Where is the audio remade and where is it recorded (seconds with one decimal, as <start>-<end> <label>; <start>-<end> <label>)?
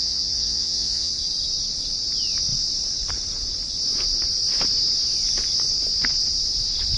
0.0-1.1 remade; 1.1-7.0 recorded